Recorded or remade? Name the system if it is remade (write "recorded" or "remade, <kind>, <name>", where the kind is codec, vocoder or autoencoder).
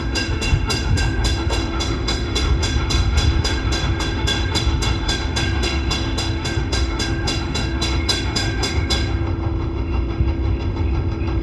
remade, autoencoder, DAC-VAE